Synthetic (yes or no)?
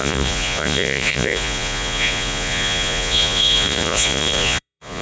yes